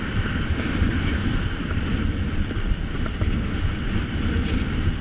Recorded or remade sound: recorded